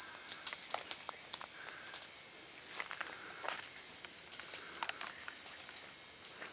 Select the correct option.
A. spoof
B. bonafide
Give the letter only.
B